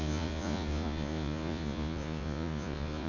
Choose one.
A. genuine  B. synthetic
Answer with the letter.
B